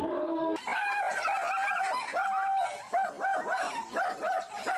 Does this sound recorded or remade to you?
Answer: recorded